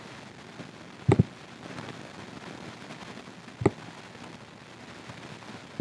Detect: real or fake real